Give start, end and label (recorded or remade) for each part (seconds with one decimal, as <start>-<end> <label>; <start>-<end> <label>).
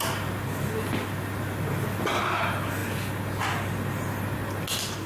0.0-5.1 recorded